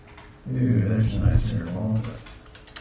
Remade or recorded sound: recorded